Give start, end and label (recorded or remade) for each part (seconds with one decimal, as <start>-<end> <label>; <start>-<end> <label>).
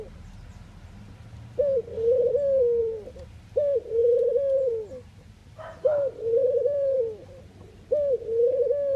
0.0-2.8 recorded; 2.8-3.6 remade; 3.6-4.0 recorded; 4.0-4.7 remade; 4.7-5.4 recorded; 5.4-7.9 remade; 7.9-9.0 recorded